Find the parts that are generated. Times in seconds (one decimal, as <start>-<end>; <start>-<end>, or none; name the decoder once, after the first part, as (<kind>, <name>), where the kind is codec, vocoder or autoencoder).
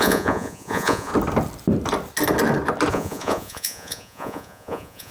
0.0-1.1 (vocoder, Vocos); 2.9-5.1